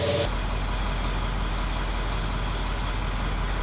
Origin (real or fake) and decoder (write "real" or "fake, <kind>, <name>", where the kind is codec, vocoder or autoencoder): real